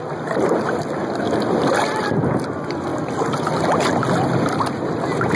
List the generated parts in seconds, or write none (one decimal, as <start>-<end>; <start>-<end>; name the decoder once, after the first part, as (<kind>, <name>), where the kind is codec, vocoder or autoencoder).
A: none